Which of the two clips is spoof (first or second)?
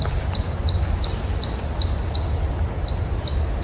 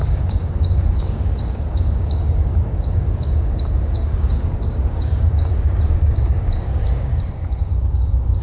second